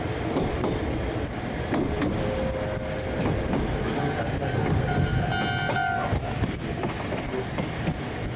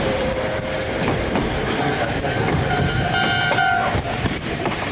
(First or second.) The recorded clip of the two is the first